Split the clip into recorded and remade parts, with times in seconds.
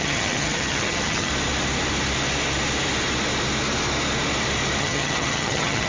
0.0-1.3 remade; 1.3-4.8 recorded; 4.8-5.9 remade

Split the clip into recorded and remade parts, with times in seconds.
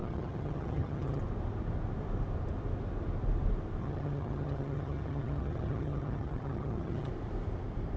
0.0-1.2 remade; 1.2-3.8 recorded; 3.8-7.1 remade; 7.1-8.0 recorded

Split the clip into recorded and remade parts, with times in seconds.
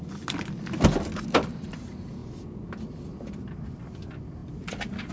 0.0-5.1 recorded